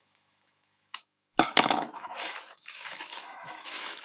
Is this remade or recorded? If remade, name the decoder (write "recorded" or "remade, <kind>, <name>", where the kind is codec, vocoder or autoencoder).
remade, autoencoder, DAC-VAE